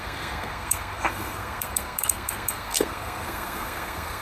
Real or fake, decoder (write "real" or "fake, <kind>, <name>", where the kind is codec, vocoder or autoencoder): fake, codec, SNAC